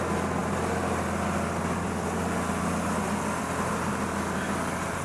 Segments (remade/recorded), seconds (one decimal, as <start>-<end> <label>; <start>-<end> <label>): 0.0-5.0 recorded